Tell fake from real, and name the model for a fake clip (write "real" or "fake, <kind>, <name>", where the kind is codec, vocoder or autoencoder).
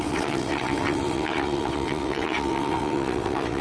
fake, vocoder, WaveNeXt